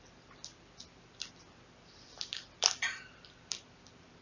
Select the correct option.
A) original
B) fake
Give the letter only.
B